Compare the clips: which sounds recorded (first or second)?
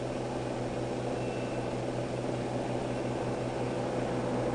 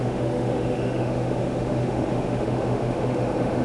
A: first